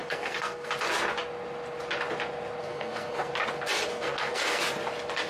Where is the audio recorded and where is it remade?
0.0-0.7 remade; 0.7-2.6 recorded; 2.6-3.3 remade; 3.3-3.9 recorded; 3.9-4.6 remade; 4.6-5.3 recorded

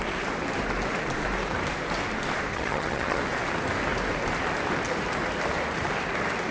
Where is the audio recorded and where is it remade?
0.0-2.5 recorded; 2.5-3.2 remade; 3.2-6.5 recorded

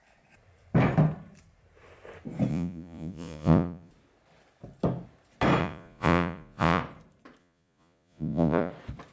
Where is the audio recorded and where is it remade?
0.0-2.5 recorded; 2.5-3.9 remade; 3.9-5.6 recorded; 5.6-6.8 remade; 6.8-7.4 recorded; 7.4-8.7 remade; 8.7-9.1 recorded

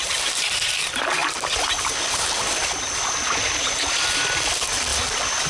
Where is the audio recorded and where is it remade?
0.0-4.9 recorded; 4.9-5.5 remade